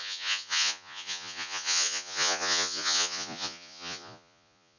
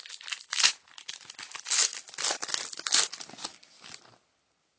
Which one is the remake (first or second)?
first